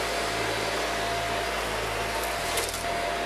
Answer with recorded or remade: recorded